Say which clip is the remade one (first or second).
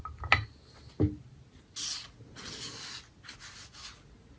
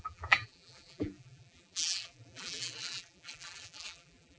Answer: second